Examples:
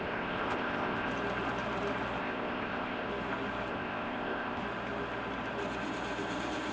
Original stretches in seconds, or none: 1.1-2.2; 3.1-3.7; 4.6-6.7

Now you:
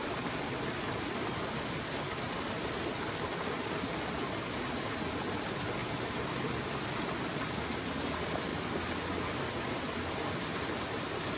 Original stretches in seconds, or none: 0.0-11.4

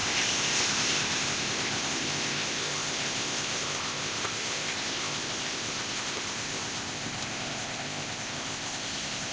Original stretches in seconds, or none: none